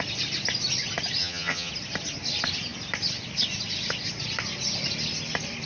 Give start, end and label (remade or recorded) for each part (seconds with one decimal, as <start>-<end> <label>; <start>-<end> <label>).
0.0-1.2 recorded; 1.2-1.7 remade; 1.7-5.7 recorded